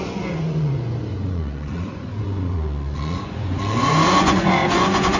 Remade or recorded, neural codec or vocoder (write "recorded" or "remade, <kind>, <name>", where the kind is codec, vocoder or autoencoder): remade, vocoder, Vocos